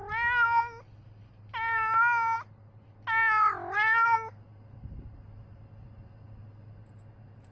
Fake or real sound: real